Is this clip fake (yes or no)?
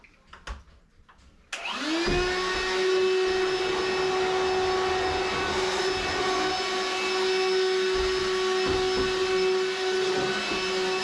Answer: no